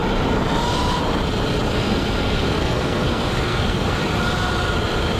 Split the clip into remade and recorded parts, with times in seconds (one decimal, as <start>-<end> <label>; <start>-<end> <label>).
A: 0.0-1.7 recorded; 1.7-4.0 remade; 4.0-5.2 recorded